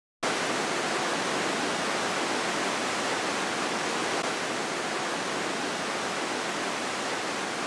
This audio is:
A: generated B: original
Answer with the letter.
B